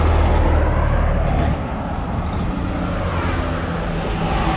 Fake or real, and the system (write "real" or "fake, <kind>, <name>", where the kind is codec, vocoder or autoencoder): real